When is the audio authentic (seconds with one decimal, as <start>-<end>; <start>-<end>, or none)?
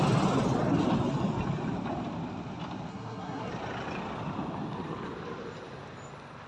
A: 0.0-2.9; 3.5-6.5